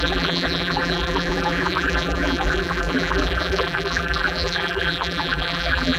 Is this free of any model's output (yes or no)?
no